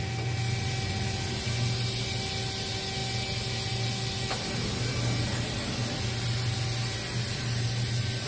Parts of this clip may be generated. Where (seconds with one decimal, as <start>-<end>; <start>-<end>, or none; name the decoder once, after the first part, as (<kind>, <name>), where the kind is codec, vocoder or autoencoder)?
none